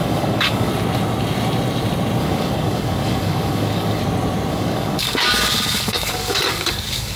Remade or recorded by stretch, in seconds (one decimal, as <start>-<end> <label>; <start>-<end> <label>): 0.0-0.7 remade; 0.7-2.2 recorded; 2.2-4.0 remade; 4.0-4.5 recorded; 4.5-7.2 remade

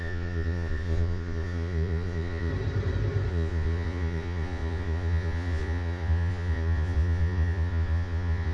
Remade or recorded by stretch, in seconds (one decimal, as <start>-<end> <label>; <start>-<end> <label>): 0.0-2.5 remade; 2.5-3.3 recorded; 3.3-8.5 remade